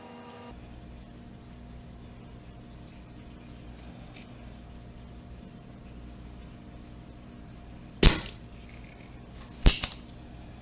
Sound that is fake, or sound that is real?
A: real